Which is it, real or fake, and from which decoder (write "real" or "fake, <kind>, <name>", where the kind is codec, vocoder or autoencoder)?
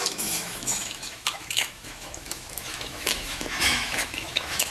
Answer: fake, autoencoder, DAC-VAE